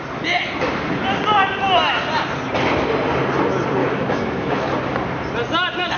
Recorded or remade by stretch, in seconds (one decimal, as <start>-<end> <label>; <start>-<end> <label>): 0.0-3.8 recorded; 3.8-4.7 remade; 4.7-6.0 recorded